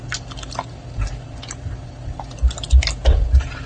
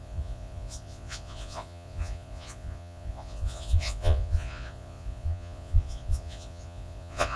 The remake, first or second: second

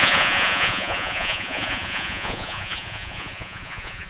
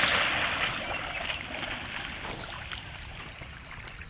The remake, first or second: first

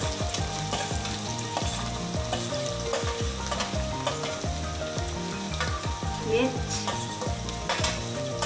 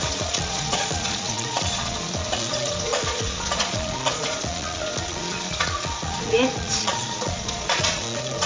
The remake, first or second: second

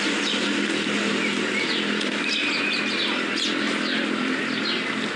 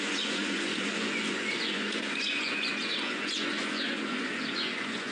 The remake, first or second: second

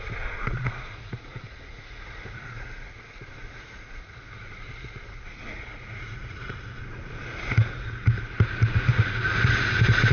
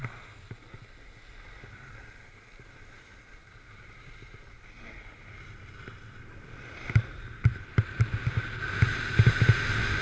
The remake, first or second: first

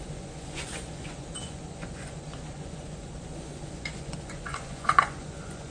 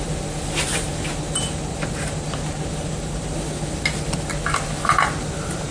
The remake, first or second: first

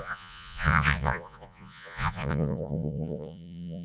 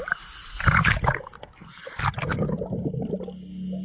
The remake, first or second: first